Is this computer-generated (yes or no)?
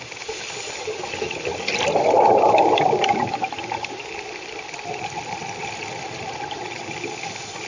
no